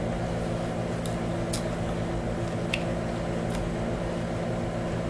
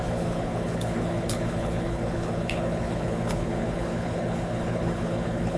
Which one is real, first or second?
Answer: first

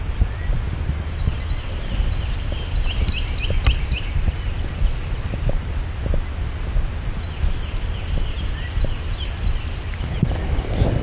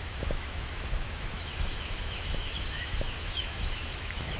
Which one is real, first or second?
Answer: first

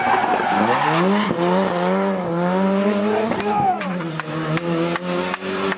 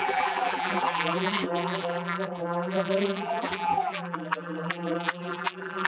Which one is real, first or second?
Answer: first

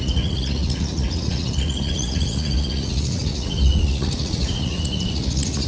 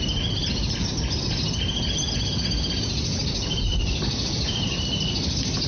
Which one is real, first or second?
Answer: second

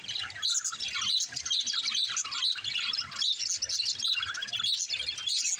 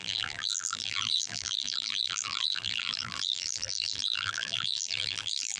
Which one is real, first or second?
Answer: first